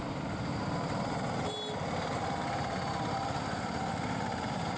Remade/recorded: recorded